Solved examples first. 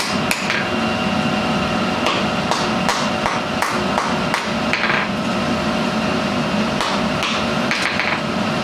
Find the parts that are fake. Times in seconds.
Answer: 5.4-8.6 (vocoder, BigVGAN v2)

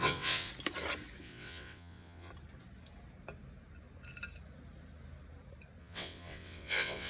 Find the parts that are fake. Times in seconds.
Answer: 0.0-0.5 (vocoder, WaveNeXt); 1.2-2.3; 5.8-7.1

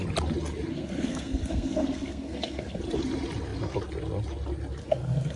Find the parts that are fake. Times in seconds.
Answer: 0.7-2.8 (codec, SNAC); 4.8-5.4